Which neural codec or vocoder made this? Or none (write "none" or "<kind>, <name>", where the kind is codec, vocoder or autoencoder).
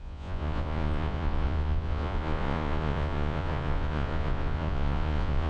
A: vocoder, Vocos